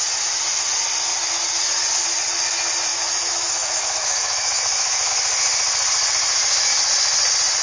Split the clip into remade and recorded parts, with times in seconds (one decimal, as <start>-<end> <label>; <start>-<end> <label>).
0.0-2.9 recorded; 2.9-5.1 remade; 5.1-7.6 recorded